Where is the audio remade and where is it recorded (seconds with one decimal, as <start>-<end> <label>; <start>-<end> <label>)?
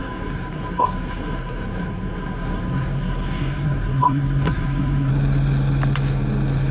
0.0-5.1 remade; 5.1-6.7 recorded